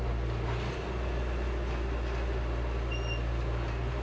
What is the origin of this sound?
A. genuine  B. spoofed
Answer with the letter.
A